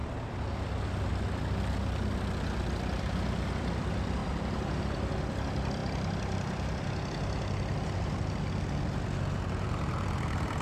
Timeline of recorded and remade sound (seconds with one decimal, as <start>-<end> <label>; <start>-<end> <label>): 0.0-10.6 recorded